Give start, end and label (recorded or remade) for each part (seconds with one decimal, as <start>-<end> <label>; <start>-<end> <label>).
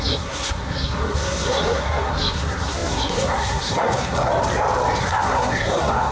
0.0-4.3 remade; 4.3-5.0 recorded; 5.0-6.1 remade